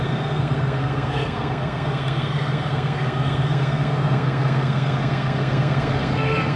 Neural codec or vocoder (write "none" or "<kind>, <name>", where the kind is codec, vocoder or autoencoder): codec, SNAC